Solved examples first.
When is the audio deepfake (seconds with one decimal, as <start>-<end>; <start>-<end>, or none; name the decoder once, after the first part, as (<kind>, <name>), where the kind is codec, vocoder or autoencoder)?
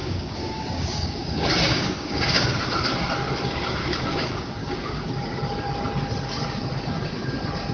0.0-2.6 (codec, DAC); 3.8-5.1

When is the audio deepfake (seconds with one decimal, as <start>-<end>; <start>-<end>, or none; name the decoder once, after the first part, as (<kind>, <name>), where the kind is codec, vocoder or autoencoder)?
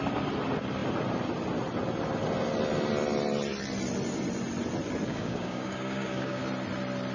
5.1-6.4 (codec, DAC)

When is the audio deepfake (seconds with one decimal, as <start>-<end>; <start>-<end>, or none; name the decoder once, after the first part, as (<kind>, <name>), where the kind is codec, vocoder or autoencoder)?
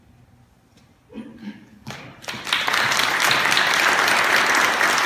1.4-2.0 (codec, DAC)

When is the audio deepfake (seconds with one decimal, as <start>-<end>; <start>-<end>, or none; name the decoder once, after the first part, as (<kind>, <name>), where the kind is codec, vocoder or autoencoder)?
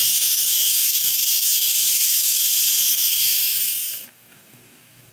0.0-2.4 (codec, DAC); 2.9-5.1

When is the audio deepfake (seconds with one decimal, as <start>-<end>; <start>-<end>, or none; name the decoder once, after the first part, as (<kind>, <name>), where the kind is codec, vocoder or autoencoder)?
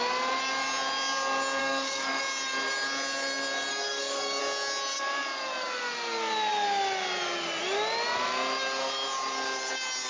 1.6-2.2 (codec, DAC); 3.7-4.4